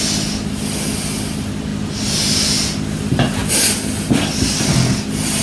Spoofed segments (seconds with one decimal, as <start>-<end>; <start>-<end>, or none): none